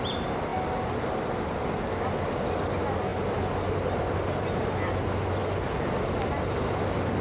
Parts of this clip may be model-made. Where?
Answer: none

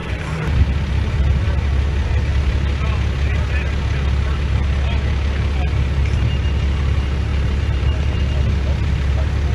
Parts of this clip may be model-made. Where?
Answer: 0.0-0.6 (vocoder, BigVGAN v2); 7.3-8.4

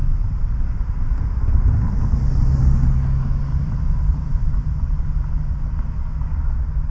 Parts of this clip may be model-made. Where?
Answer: 0.0-1.0 (vocoder, BigVGAN v2); 3.5-5.0